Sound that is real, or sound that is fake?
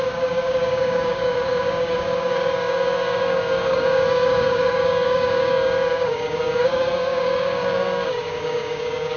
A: fake